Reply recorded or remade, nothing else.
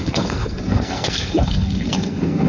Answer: remade